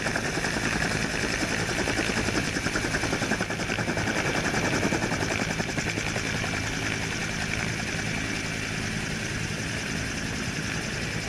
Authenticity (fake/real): real